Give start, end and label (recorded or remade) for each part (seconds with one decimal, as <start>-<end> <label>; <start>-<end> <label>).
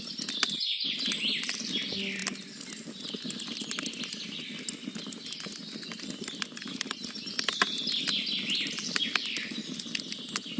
0.0-10.6 recorded